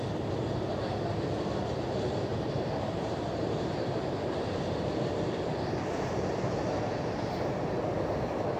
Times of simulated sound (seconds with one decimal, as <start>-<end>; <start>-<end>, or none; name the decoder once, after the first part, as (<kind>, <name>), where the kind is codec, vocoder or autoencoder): 2.3-6.3 (vocoder, BigVGAN v2)